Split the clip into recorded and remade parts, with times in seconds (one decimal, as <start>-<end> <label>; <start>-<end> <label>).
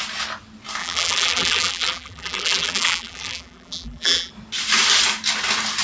0.0-0.8 recorded; 0.8-4.3 remade; 4.3-5.8 recorded